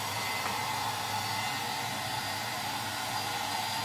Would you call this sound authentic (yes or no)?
yes